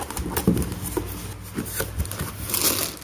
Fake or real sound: real